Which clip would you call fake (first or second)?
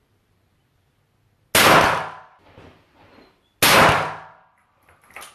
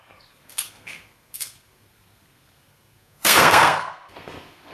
second